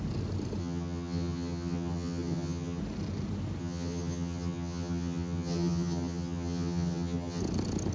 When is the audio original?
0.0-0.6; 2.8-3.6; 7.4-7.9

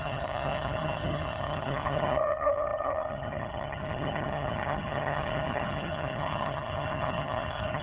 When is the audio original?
none

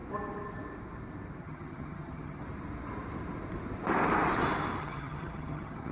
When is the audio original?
0.0-1.4; 2.4-4.8

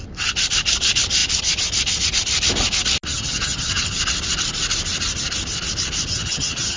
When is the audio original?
0.0-3.1; 4.0-6.1

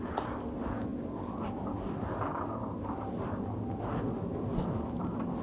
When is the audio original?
0.0-5.4

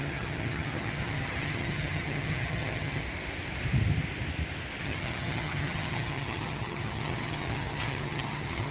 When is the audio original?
3.0-4.8

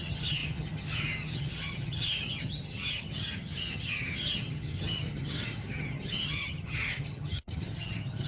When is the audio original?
none